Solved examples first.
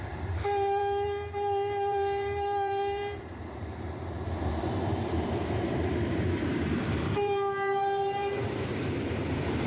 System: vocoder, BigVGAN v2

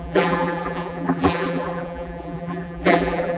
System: vocoder, BigVGAN v2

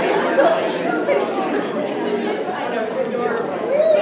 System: none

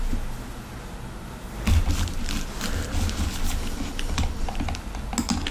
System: none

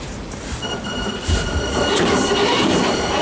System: vocoder, BigVGAN v2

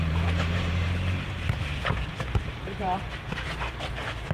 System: vocoder, BigVGAN v2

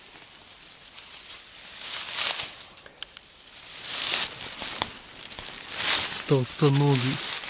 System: none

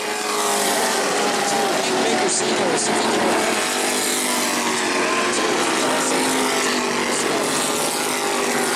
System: none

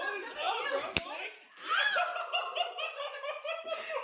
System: none